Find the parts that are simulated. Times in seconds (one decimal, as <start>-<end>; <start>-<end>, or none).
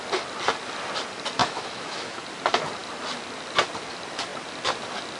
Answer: 1.4-2.2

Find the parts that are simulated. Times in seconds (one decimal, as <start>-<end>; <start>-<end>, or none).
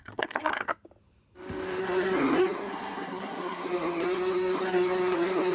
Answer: 0.0-0.7; 1.8-5.5